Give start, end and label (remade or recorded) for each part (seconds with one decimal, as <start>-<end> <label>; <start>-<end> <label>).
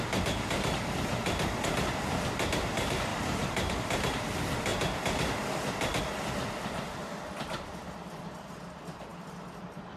0.0-10.0 recorded